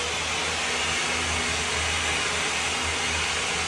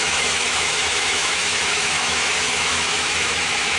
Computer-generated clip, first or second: second